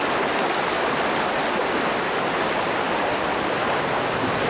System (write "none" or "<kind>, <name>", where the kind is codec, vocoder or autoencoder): none